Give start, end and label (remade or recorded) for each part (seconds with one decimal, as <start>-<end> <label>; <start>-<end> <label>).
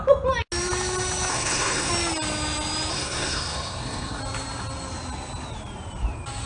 0.0-1.3 recorded; 1.3-1.9 remade; 1.9-2.9 recorded; 2.9-4.2 remade; 4.2-6.5 recorded